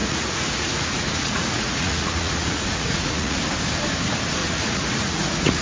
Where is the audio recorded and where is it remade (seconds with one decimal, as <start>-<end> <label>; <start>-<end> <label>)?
0.0-3.4 remade; 3.4-4.4 recorded; 4.4-5.6 remade